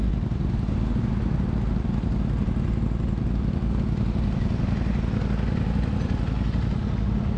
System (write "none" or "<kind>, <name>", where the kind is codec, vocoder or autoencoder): none